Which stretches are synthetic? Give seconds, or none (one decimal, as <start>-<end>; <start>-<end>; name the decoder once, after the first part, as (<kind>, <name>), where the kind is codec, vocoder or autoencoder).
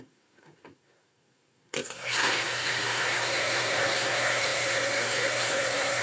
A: 0.0-6.0 (codec, SNAC)